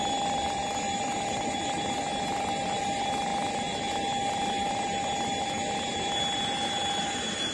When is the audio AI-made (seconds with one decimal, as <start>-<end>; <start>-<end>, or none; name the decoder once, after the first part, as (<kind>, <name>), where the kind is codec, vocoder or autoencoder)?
none